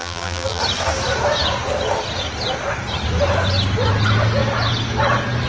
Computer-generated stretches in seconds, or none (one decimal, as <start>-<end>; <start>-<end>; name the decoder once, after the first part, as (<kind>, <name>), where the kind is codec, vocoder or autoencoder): 0.0-0.6 (vocoder, BigVGAN v2)